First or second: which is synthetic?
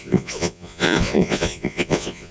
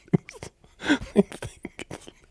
first